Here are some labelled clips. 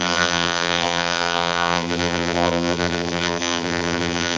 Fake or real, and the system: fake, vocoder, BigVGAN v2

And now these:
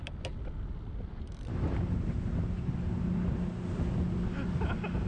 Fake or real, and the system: real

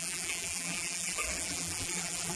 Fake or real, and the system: fake, vocoder, BigVGAN v2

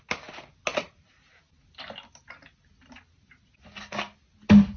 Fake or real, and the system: real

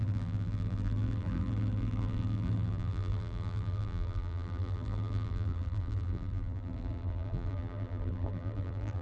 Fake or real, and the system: fake, vocoder, BigVGAN v2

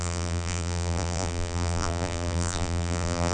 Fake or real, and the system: fake, vocoder, BigVGAN v2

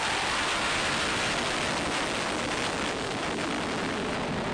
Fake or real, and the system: real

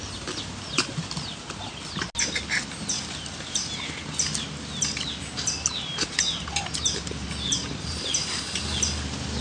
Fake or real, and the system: real